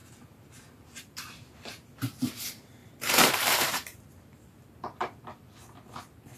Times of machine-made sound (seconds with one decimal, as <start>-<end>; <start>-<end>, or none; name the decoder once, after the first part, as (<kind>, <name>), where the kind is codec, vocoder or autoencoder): 0.0-2.2 (vocoder, BigVGAN v2); 2.8-4.0